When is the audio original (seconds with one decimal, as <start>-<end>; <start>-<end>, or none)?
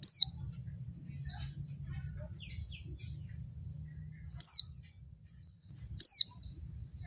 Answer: 0.0-7.1